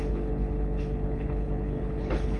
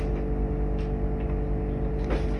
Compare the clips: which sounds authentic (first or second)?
second